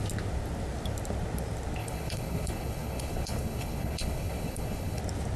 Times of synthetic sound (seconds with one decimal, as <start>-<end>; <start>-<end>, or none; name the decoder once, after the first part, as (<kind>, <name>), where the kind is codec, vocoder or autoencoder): 1.8-5.0 (codec, HILCodec)